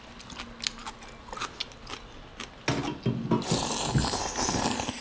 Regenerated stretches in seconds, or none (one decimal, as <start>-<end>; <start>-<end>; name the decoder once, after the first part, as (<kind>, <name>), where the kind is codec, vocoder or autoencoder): none